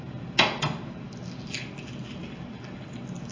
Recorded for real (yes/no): yes